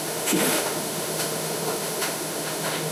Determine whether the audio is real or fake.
fake